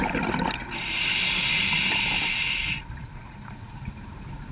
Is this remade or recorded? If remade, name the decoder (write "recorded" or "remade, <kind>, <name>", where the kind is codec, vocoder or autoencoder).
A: recorded